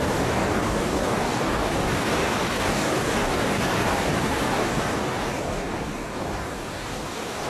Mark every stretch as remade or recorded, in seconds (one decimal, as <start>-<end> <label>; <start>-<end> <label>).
0.0-7.5 remade